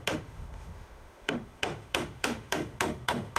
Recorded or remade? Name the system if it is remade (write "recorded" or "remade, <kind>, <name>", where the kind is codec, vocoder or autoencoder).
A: remade, autoencoder, DAC-VAE